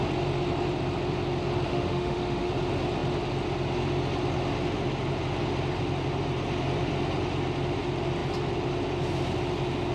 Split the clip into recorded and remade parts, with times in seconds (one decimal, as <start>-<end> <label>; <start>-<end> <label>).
0.0-1.7 recorded; 1.7-2.5 remade; 2.5-9.9 recorded